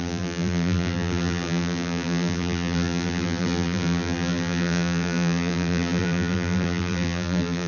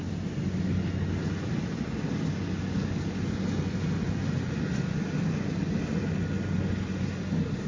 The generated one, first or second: first